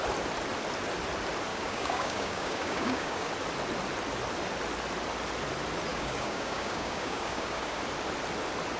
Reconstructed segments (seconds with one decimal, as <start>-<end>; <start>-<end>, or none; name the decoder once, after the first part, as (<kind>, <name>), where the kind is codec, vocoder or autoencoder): 1.5-3.3 (codec, DAC); 5.9-7.8